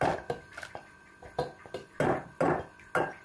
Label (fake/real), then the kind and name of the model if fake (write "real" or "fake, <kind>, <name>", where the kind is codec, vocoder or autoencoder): real